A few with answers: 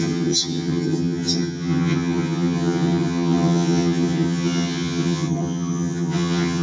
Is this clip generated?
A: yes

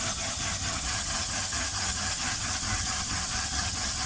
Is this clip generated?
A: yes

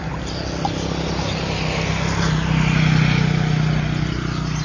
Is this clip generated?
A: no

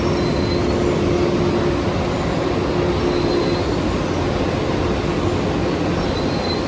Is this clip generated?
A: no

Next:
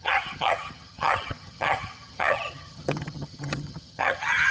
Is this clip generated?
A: yes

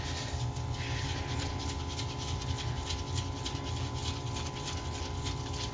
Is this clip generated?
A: no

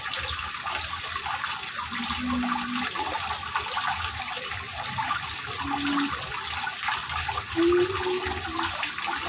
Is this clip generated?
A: no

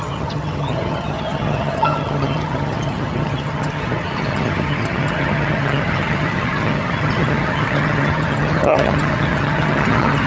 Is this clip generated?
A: yes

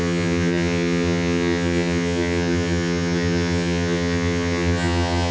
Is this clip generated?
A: yes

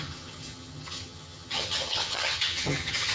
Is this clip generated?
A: yes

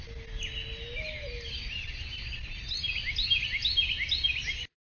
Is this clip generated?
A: no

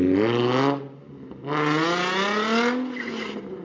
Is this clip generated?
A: no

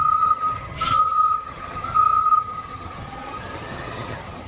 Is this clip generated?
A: yes